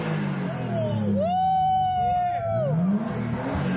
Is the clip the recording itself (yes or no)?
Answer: yes